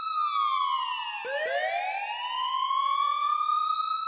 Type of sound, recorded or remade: recorded